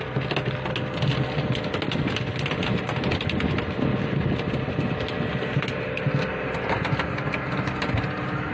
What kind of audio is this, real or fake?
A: real